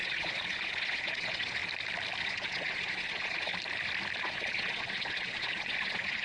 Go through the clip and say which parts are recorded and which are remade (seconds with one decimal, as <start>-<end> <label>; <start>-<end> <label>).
0.0-1.6 remade; 1.6-2.2 recorded; 2.2-3.5 remade; 3.5-4.2 recorded; 4.2-6.2 remade